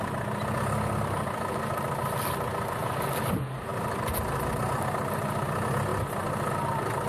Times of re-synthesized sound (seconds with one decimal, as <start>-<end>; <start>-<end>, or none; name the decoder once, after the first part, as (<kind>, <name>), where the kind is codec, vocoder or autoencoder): none